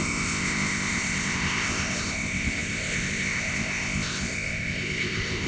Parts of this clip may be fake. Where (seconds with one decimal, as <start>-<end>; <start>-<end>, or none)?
0.0-5.5

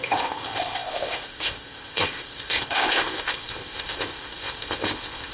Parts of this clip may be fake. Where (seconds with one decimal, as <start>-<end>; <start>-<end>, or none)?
0.0-5.3

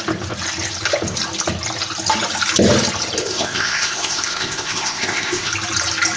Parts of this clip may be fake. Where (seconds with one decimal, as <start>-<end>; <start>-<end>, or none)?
3.2-5.5

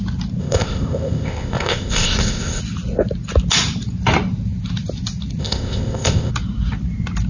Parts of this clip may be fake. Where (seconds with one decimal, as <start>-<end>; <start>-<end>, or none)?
0.4-2.6; 5.4-6.3

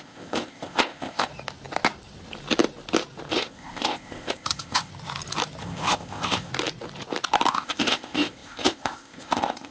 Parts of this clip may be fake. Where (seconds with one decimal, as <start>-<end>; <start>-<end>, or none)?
0.0-1.3; 3.3-4.9; 5.6-6.5; 7.5-9.7

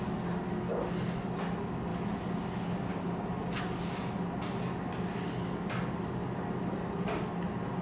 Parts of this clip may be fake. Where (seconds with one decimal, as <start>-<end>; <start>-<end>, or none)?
none